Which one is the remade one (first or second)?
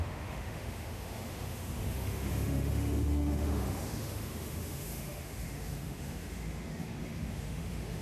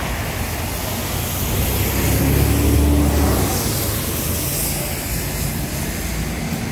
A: first